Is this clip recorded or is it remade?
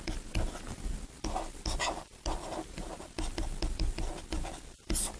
recorded